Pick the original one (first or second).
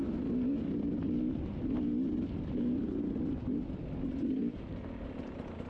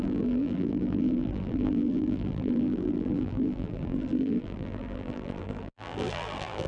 first